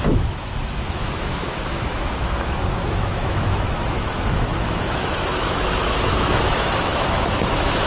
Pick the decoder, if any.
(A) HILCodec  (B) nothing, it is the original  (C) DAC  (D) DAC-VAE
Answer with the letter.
D